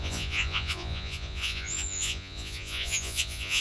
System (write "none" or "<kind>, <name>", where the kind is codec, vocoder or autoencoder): vocoder, Vocos